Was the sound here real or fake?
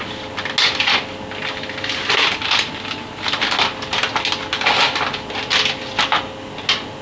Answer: real